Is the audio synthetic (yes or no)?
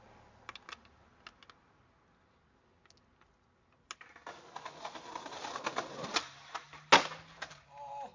no